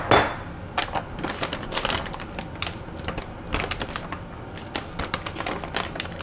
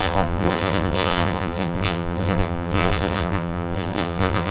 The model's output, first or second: second